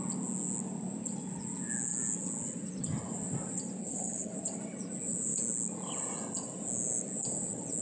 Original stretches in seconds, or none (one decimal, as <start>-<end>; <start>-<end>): 0.0-3.8; 4.3-7.8